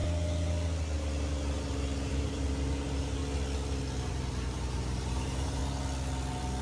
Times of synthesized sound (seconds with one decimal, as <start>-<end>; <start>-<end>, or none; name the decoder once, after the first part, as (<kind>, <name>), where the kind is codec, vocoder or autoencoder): 2.1-3.2 (vocoder, BigVGAN v2); 4.1-5.6